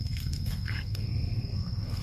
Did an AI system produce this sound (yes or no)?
yes